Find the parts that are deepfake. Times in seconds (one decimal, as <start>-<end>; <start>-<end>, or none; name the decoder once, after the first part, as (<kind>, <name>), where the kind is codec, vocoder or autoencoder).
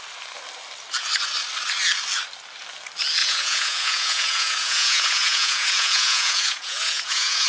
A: 3.2-7.5 (vocoder, Vocos)